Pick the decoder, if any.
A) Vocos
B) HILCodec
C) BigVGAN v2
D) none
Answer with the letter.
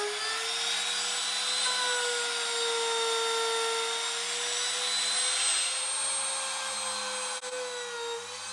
D